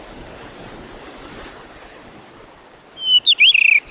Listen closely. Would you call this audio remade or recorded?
recorded